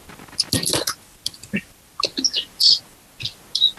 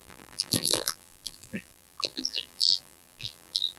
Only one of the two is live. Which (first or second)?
first